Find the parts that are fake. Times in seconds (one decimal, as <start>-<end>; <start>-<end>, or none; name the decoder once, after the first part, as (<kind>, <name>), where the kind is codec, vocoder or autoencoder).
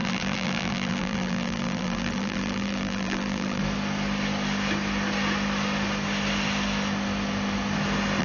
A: 0.0-3.6 (vocoder, BigVGAN v2)